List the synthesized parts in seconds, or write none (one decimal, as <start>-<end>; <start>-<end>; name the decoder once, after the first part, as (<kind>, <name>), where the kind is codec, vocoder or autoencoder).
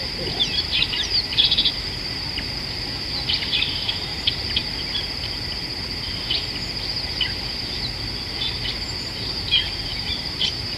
0.0-4.1 (vocoder, BigVGAN v2); 9.0-10.8